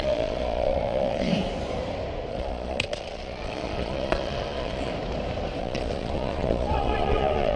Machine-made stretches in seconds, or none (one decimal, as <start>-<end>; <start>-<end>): 0.0-1.3; 2.3-4.9; 5.6-7.6